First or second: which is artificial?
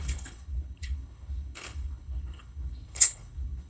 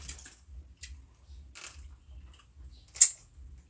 first